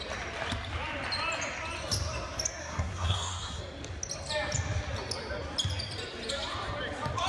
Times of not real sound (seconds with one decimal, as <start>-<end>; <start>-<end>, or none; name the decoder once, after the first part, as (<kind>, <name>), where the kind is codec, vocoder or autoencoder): 2.6-3.6 (codec, SNAC)